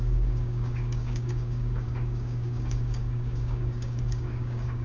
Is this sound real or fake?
fake